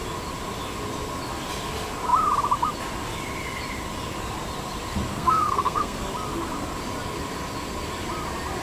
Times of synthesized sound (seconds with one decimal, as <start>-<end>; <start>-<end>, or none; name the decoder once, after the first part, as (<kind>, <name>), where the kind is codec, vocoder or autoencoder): 5.1-6.1 (codec, SNAC)